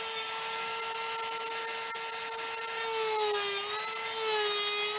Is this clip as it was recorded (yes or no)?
yes